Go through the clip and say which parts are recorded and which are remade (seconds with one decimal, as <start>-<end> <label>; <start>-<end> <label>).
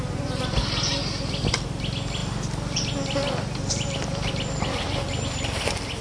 0.0-6.0 recorded